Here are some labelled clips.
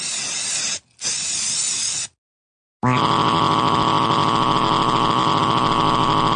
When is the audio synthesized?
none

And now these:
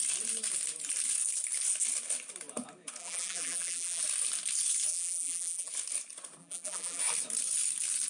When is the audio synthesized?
3.0-4.0 (vocoder, BigVGAN v2); 4.9-5.7; 6.4-7.0

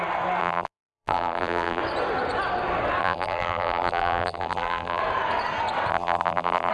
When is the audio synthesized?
0.4-1.8 (vocoder, BigVGAN v2); 3.0-5.0; 5.9-6.7

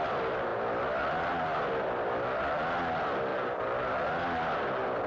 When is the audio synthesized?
none

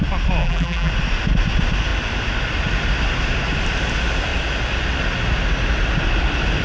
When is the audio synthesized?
0.4-0.9 (vocoder, BigVGAN v2)

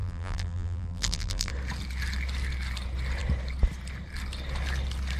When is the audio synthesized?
0.0-1.5 (vocoder, BigVGAN v2)